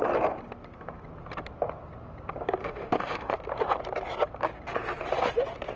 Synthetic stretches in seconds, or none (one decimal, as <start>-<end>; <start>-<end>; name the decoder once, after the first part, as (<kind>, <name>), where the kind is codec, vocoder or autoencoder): 2.6-3.3 (autoencoder, DAC-VAE)